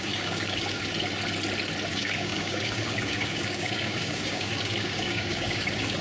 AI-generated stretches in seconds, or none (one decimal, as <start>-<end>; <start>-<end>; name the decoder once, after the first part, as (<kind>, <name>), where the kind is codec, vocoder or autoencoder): 0.0-0.8 (codec, DAC); 1.9-6.0